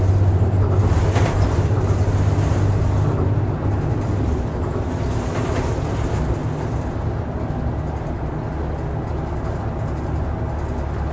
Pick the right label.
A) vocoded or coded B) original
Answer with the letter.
B